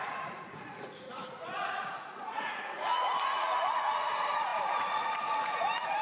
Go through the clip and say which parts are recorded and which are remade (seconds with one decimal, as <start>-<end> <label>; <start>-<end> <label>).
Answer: 0.0-6.0 remade